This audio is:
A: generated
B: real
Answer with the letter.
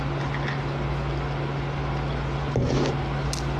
B